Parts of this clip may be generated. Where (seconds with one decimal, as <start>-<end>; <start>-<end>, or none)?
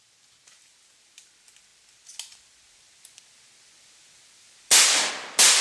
none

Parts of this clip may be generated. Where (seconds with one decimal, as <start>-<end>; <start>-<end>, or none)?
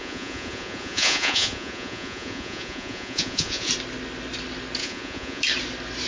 0.0-3.7; 4.8-5.4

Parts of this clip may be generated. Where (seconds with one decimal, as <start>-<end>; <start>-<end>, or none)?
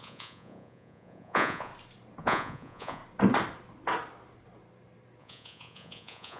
0.0-1.7; 2.2-3.0; 5.2-6.4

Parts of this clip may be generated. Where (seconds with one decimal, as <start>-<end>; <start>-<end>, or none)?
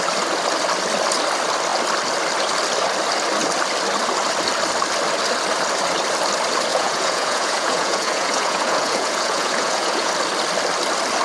6.7-10.1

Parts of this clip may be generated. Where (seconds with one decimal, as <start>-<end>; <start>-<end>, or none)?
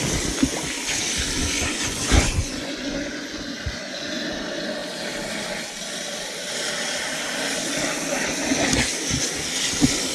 1.4-4.2